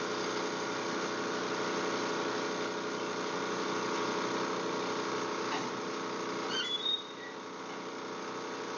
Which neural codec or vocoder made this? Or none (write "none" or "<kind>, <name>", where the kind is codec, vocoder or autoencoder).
none